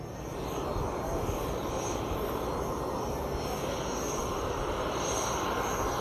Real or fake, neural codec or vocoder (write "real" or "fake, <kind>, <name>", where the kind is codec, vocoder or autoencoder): real